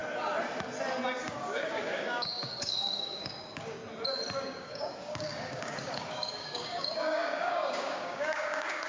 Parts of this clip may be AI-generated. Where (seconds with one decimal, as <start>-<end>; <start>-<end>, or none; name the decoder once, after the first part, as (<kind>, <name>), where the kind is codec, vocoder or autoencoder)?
1.2-3.8 (codec, DAC); 4.4-8.9